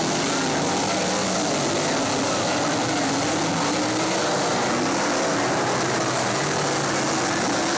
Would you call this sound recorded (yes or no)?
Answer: yes